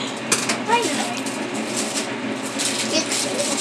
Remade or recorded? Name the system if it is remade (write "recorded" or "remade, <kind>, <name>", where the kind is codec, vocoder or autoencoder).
recorded